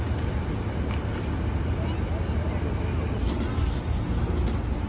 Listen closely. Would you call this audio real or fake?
real